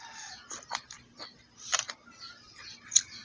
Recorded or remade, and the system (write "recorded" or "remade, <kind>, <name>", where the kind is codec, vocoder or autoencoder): recorded